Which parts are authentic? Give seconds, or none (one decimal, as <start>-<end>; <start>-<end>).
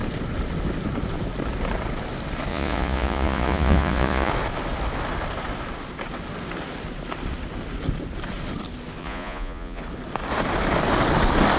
0.0-2.5; 4.3-9.0; 9.8-11.6